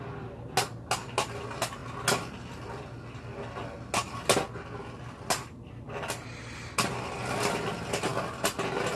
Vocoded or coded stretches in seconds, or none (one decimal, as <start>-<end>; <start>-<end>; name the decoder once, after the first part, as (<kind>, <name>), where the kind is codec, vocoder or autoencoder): none